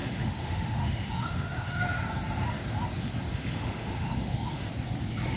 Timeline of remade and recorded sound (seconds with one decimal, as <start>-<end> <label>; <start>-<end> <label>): 0.0-1.8 remade; 1.8-3.3 recorded; 3.3-4.7 remade; 4.7-5.4 recorded